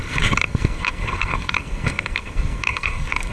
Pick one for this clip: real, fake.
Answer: fake